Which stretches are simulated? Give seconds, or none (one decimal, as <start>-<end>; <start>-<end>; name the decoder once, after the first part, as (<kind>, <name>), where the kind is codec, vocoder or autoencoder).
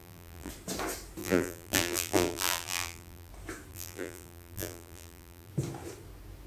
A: 0.0-0.5 (vocoder, BigVGAN v2); 1.2-3.3; 3.7-5.5